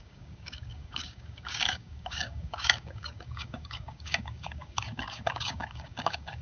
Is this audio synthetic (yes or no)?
yes